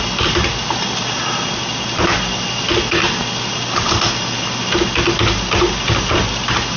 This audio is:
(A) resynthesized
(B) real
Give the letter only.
B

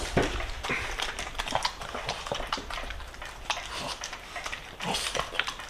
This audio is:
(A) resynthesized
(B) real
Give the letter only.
B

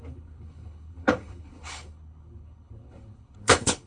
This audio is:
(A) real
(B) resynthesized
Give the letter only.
B